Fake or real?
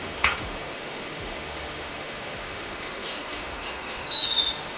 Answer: fake